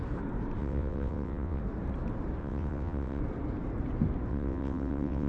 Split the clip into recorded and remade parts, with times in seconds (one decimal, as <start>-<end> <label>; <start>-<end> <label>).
0.0-0.6 recorded; 0.6-1.6 remade; 1.6-2.4 recorded; 2.4-3.2 remade; 3.2-4.3 recorded; 4.3-5.3 remade